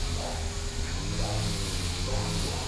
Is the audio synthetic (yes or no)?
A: no